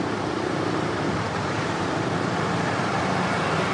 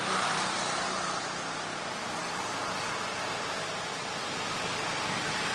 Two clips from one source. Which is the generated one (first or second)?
first